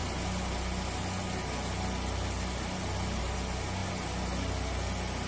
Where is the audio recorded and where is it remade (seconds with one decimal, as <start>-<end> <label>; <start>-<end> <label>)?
0.0-5.3 recorded